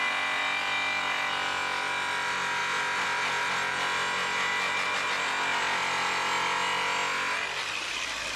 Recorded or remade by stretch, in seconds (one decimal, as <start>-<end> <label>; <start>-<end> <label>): 0.0-8.4 recorded

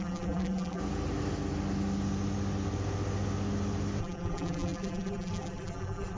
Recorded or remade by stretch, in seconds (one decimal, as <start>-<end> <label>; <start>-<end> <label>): 0.0-0.8 remade; 0.8-4.0 recorded; 4.0-6.2 remade

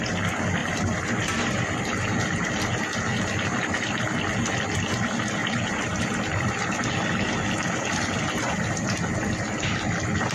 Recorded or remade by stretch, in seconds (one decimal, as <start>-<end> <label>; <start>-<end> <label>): 0.0-0.6 recorded; 0.6-2.5 remade; 2.5-5.4 recorded; 5.4-6.5 remade; 6.5-10.3 recorded

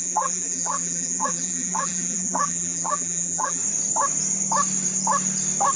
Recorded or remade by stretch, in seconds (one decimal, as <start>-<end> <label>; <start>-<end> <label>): 0.0-3.6 remade; 3.6-5.8 recorded

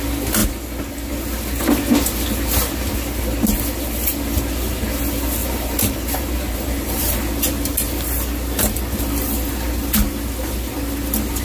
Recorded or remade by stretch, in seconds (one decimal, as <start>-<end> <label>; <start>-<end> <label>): 0.0-5.4 recorded; 5.4-7.1 remade; 7.1-11.4 recorded